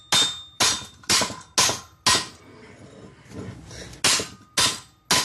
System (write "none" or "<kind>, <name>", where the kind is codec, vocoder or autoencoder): none